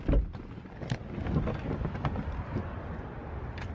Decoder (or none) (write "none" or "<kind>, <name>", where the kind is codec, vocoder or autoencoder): none